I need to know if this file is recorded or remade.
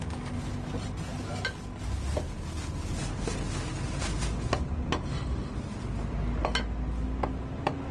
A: recorded